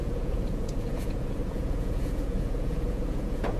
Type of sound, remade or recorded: remade